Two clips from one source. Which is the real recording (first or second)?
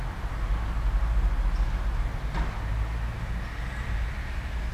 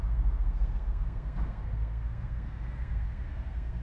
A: first